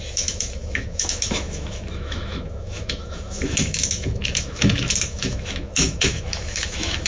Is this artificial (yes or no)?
yes